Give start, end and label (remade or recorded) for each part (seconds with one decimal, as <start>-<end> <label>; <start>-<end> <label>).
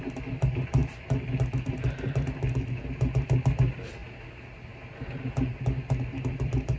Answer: 0.0-6.8 recorded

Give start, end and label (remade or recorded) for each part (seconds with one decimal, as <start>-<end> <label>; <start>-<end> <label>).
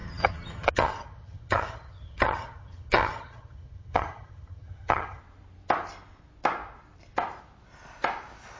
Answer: 0.0-5.2 remade; 5.2-8.6 recorded